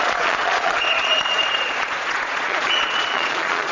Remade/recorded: remade